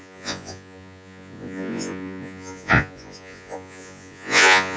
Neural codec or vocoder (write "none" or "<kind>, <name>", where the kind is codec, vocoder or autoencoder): vocoder, Vocos